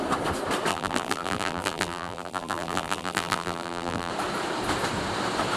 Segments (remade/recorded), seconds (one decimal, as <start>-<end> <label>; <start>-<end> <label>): 0.0-0.7 recorded; 0.7-4.1 remade; 4.1-5.6 recorded